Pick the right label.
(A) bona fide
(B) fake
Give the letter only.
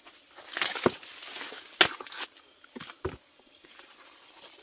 A